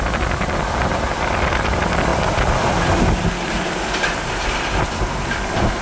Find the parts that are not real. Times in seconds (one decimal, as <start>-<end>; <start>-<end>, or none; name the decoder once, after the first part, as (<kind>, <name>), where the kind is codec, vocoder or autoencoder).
0.0-2.1 (vocoder, BigVGAN v2); 3.5-5.8